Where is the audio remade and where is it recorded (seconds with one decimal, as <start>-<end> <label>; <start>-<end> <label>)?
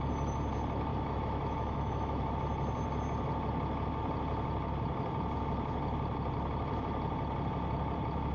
0.0-0.9 recorded; 0.9-2.3 remade; 2.3-8.3 recorded